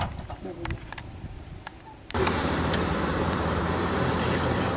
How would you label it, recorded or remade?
remade